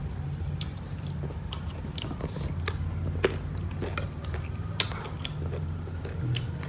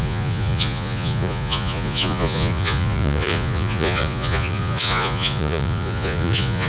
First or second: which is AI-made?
second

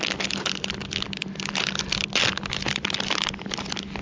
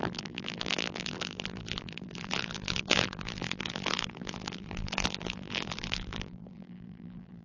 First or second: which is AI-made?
second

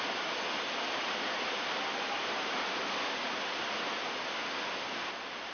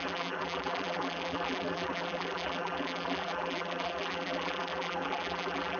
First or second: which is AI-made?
second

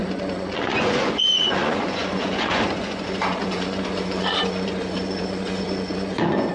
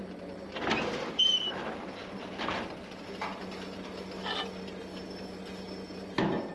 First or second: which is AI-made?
first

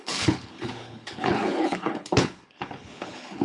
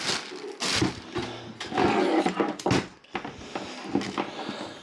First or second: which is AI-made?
first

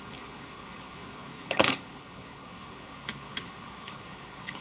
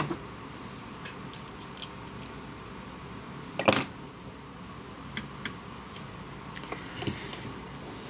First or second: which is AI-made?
first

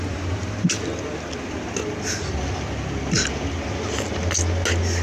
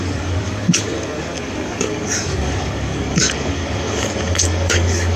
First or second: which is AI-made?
second